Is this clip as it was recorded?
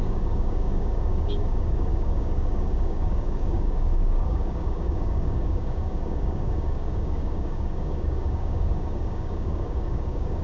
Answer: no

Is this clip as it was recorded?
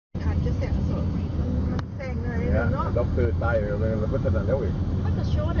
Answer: yes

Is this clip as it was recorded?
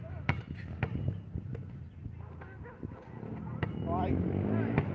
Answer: yes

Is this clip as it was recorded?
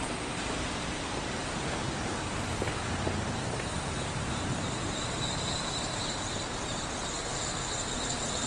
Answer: no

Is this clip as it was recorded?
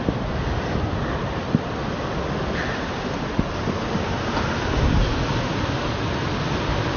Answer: yes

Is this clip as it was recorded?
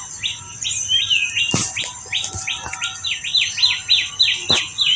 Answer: yes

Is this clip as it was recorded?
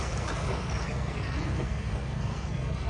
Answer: no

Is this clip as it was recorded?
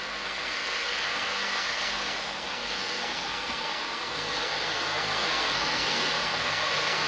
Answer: no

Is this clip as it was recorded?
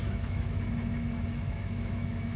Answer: no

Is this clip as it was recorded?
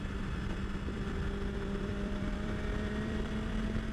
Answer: no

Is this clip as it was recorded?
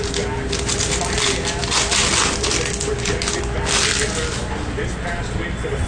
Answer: yes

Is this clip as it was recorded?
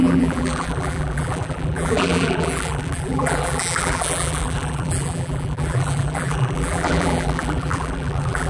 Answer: no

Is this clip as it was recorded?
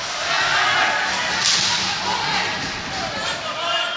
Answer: yes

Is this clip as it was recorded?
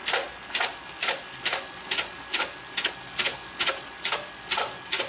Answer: yes